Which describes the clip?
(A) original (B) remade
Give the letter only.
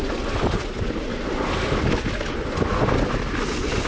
A